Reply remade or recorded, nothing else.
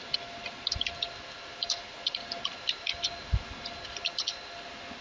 recorded